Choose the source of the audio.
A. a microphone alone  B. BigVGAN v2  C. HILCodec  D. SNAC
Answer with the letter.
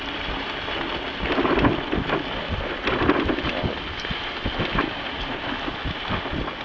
A